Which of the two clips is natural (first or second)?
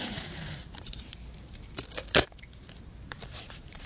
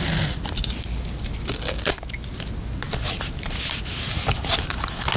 second